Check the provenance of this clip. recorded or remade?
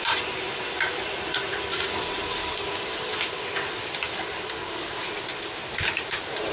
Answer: recorded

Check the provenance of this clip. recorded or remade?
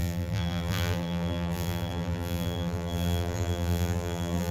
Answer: remade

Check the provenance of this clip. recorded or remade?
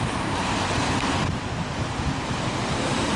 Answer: remade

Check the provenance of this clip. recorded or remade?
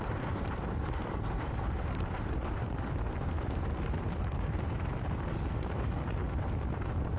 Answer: remade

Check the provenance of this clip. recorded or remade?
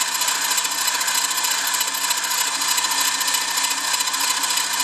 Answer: recorded